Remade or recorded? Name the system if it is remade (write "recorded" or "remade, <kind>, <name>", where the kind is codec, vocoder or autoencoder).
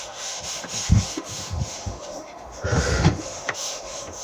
remade, autoencoder, DAC-VAE